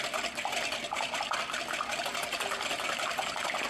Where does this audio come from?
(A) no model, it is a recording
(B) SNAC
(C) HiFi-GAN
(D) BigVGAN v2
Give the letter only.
A